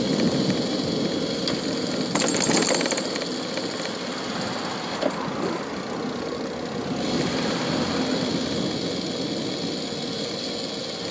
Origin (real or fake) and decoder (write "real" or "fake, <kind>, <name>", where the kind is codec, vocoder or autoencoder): real